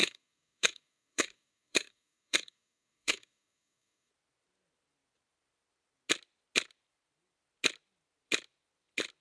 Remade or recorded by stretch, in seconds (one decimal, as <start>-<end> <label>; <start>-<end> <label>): 0.0-4.1 remade; 4.1-9.2 recorded